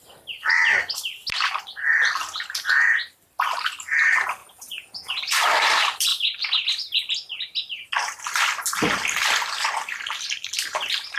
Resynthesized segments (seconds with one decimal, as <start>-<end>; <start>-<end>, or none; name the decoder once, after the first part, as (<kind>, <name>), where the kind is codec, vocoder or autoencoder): 4.4-5.2 (vocoder, Vocos)